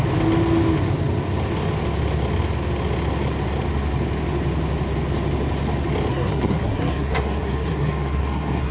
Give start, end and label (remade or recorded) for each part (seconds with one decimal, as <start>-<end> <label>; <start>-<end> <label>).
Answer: 0.0-6.1 recorded; 6.1-8.7 remade